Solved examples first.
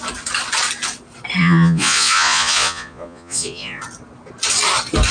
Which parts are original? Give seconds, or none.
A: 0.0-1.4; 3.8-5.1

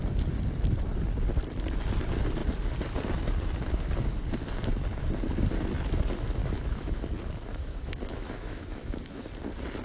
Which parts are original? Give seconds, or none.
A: 0.0-6.4; 7.0-7.5; 9.2-9.8